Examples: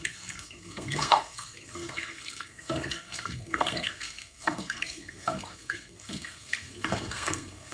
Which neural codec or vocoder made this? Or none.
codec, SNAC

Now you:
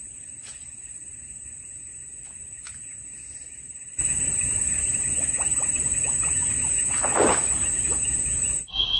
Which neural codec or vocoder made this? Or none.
none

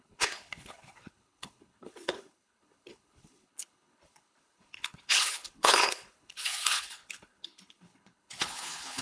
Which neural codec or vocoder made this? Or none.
codec, HILCodec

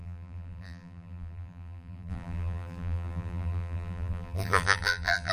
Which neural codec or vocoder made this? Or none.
vocoder, BigVGAN v2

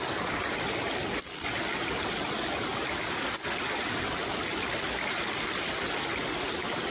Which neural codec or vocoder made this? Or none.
none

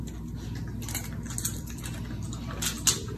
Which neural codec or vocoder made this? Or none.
none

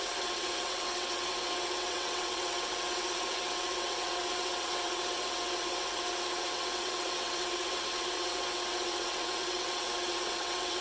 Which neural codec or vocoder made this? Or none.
vocoder, WaveNeXt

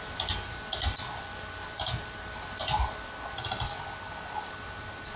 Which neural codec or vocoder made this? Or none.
none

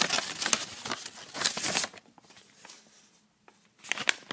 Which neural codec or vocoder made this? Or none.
none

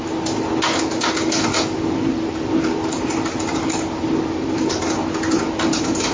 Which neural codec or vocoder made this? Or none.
none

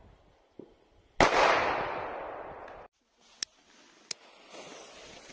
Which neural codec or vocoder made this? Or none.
none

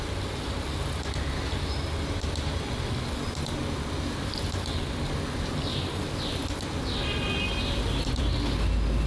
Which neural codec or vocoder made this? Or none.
none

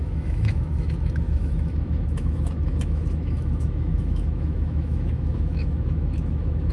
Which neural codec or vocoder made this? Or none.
autoencoder, DAC-VAE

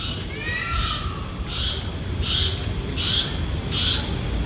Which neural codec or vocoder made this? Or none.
none